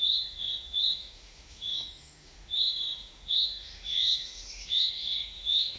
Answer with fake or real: fake